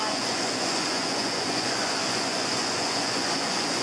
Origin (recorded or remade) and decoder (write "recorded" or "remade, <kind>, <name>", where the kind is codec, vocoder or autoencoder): remade, vocoder, Vocos